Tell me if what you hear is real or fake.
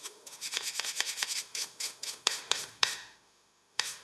fake